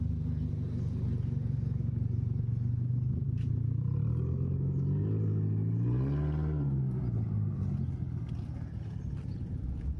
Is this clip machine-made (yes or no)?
no